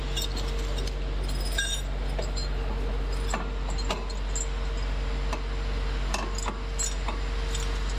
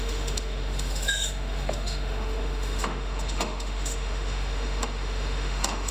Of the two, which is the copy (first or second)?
second